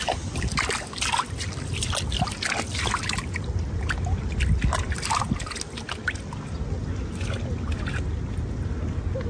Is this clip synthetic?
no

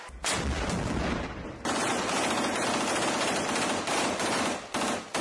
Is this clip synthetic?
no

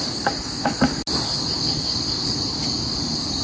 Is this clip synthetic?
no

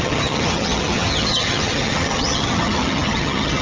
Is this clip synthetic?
yes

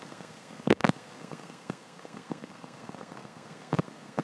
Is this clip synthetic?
yes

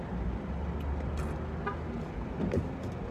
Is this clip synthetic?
no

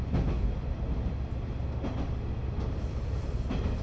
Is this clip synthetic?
no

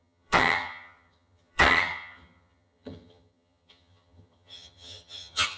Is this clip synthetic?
yes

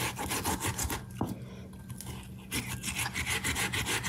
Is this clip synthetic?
no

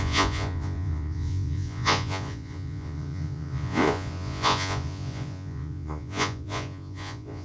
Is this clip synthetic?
yes